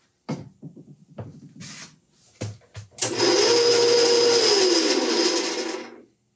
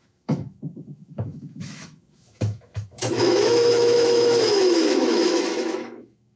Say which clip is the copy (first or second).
second